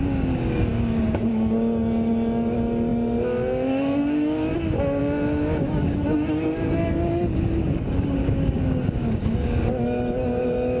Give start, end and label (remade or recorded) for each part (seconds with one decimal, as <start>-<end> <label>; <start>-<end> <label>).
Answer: 0.0-4.5 remade; 4.5-5.0 recorded; 5.0-10.8 remade